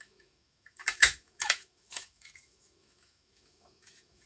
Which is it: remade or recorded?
remade